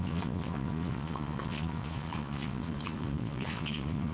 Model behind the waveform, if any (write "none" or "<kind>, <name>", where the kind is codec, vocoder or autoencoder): vocoder, Vocos